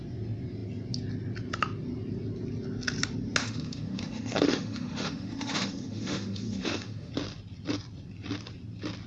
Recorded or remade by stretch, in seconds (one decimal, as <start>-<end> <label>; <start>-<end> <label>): 0.0-3.4 recorded; 3.4-7.1 remade; 7.1-9.1 recorded